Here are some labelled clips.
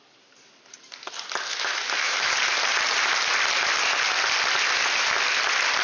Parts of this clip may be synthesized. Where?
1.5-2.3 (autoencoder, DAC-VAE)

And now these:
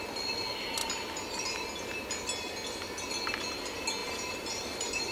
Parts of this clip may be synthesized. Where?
4.0-5.1 (vocoder, BigVGAN v2)

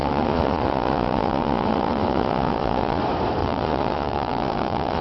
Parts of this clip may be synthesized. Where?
0.0-3.0 (vocoder, Vocos); 3.4-5.0

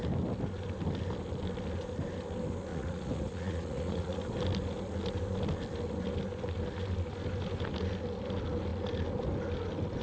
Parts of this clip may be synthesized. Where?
2.7-4.2 (vocoder, Vocos)

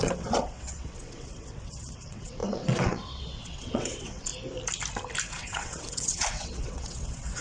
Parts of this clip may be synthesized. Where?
0.0-4.3 (vocoder, WaveNeXt); 5.3-7.4